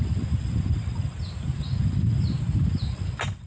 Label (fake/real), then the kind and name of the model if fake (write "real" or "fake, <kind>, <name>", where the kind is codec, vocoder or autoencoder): real